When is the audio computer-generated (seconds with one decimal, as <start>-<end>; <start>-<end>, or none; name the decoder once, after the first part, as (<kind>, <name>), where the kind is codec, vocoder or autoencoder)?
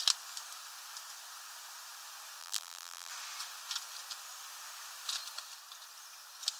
2.4-3.1 (vocoder, BigVGAN v2)